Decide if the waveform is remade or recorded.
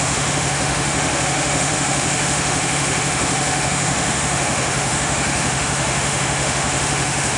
remade